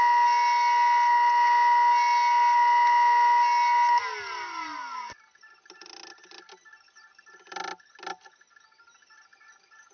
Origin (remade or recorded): recorded